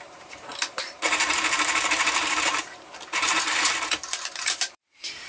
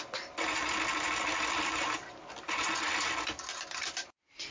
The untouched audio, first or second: second